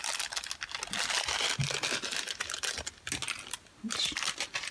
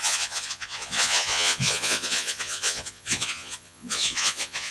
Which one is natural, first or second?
first